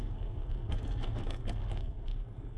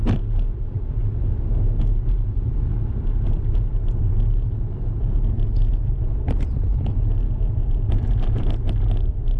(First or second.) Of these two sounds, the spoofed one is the first